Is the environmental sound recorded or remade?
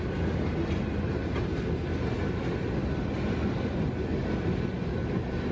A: recorded